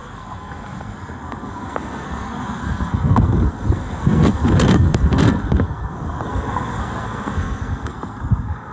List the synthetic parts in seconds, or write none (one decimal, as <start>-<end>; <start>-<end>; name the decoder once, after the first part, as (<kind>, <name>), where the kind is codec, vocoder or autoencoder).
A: 0.0-8.7 (codec, SNAC)